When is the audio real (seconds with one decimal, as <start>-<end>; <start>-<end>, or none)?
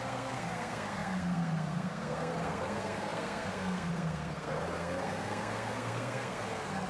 none